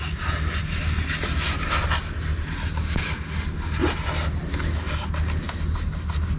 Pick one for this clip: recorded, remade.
recorded